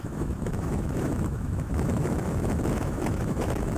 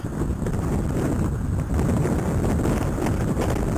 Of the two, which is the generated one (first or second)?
first